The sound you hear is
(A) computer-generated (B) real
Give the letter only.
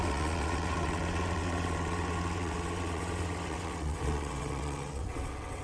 A